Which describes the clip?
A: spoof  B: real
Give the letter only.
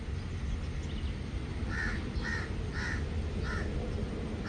B